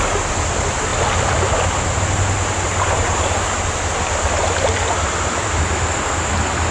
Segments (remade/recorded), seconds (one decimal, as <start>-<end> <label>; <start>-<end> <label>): 0.0-6.7 recorded